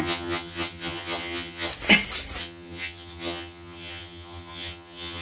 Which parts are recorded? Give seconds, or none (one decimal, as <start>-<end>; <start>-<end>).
1.7-2.4